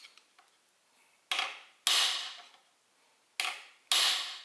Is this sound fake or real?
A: real